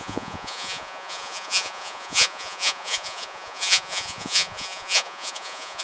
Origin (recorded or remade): remade